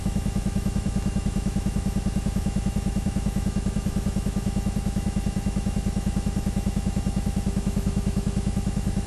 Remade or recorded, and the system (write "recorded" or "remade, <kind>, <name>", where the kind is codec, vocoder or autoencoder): remade, autoencoder, DAC-VAE